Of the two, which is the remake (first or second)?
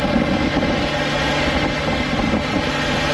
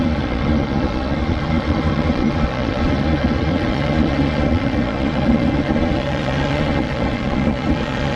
second